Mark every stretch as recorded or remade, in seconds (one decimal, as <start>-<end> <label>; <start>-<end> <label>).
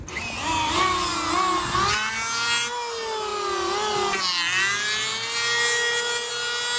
0.0-6.8 recorded